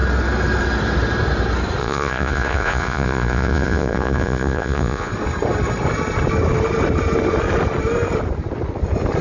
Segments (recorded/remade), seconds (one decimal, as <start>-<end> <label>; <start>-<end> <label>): 0.0-1.8 recorded; 1.8-5.1 remade; 5.1-9.2 recorded